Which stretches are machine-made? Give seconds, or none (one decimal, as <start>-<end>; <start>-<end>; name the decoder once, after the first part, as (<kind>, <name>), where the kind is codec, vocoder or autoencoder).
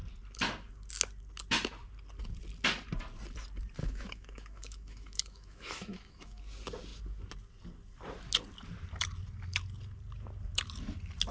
3.8-6.4 (autoencoder, DAC-VAE)